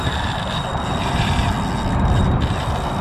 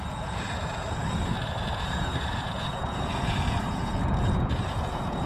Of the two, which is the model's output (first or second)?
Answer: second